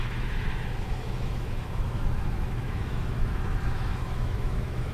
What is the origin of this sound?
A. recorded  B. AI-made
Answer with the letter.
B